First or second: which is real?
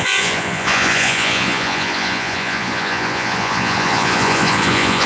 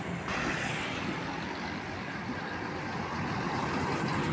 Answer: second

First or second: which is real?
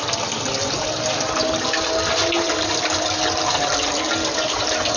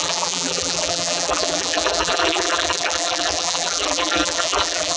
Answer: first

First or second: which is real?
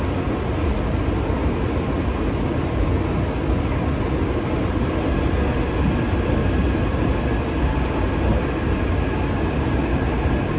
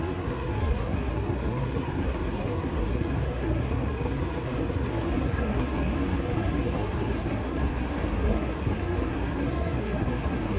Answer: first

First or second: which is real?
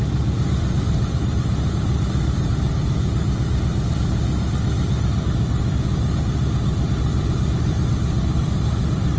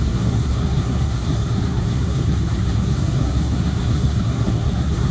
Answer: first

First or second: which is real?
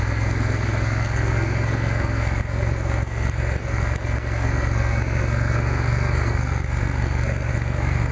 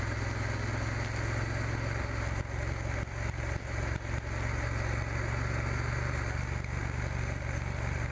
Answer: second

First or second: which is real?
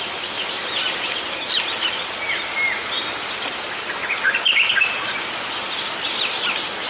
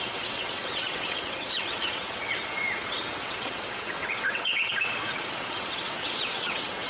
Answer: first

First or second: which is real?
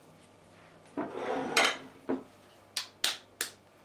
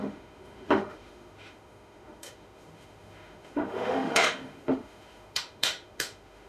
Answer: first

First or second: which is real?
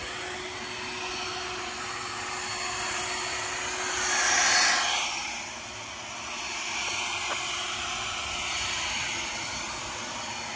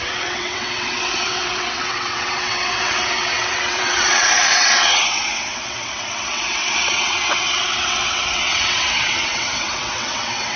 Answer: first